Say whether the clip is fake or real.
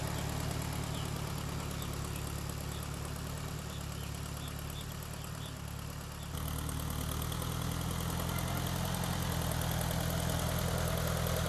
real